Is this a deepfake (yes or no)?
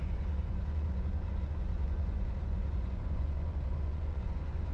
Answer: yes